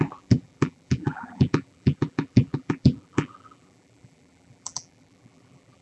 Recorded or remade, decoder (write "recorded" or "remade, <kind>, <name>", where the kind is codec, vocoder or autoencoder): remade, vocoder, BigVGAN v2